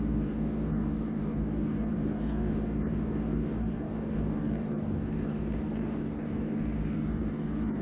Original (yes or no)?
no